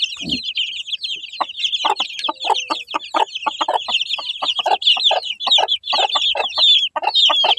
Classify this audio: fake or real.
real